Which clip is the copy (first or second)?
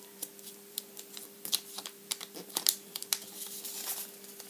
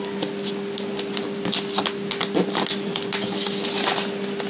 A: first